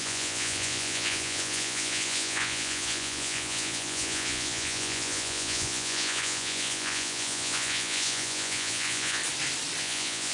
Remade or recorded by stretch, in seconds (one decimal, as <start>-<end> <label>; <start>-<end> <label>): 0.0-9.2 remade; 9.2-9.8 recorded; 9.8-10.3 remade